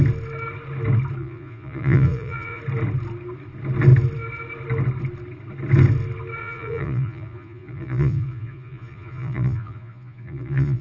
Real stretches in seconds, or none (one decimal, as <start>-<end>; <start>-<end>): 0.0-1.2; 2.6-6.4